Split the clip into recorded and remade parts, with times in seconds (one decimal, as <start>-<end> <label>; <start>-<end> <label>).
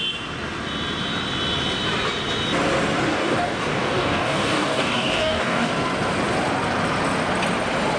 0.0-3.1 recorded; 3.1-5.7 remade; 5.7-8.0 recorded